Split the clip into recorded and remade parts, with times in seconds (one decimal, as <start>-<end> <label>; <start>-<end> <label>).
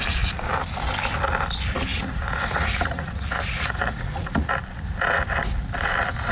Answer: 0.0-1.9 recorded; 1.9-4.5 remade; 4.5-6.3 recorded